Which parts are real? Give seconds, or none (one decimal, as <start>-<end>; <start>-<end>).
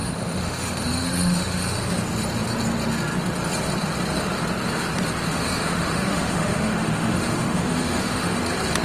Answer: 2.0-5.3; 8.4-8.8